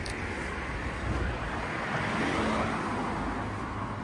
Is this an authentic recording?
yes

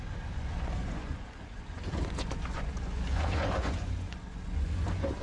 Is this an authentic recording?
no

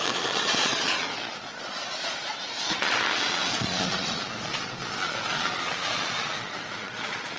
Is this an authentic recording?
no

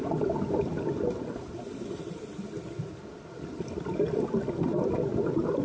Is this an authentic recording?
yes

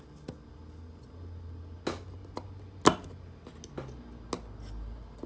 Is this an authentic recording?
yes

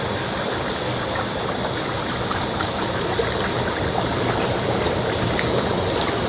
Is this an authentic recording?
yes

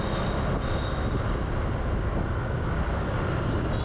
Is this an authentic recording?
yes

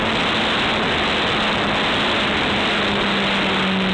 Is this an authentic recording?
yes